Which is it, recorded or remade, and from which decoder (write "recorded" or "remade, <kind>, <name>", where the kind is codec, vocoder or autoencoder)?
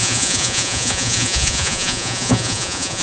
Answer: remade, vocoder, Vocos